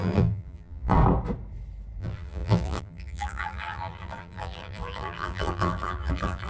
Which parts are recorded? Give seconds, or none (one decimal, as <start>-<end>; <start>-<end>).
1.0-2.0